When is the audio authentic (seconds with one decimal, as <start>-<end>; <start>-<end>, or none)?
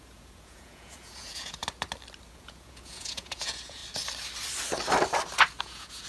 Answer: 1.6-2.3; 3.8-5.6